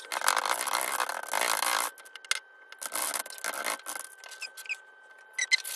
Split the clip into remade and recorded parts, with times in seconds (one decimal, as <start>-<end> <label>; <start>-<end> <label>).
0.0-5.8 recorded